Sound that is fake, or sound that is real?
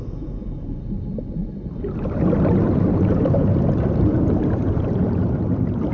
real